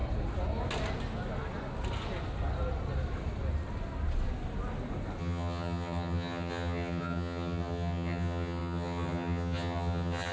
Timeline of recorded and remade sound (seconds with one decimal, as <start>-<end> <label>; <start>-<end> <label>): 0.0-5.2 recorded; 5.2-10.3 remade